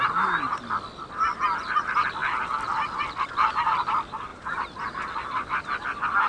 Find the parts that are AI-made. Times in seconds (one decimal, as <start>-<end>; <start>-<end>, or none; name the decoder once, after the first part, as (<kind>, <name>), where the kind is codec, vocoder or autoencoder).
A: 4.3-4.9 (vocoder, BigVGAN v2)